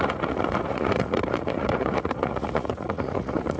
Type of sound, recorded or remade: remade